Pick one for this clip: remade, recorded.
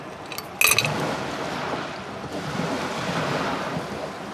recorded